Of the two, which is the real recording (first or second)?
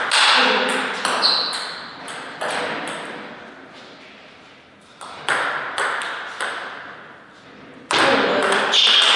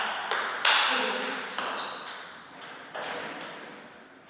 first